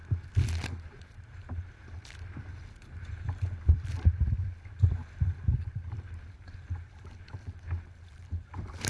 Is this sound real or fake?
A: real